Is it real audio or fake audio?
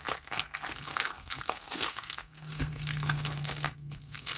fake